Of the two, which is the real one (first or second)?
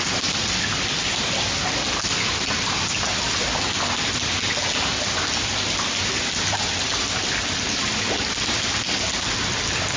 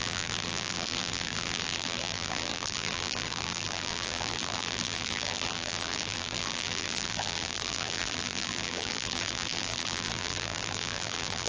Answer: first